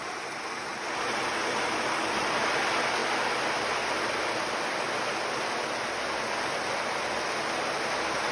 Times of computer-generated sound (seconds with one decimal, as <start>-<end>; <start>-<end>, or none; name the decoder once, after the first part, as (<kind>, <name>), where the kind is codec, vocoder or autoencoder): none